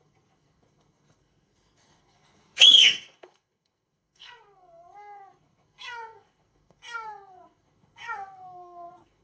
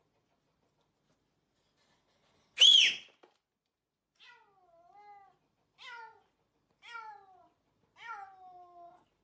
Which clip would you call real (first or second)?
second